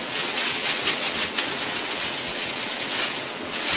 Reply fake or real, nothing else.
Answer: fake